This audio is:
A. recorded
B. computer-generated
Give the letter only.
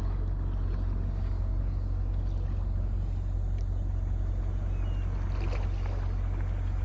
A